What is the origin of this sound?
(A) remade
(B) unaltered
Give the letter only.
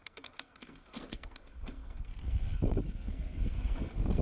A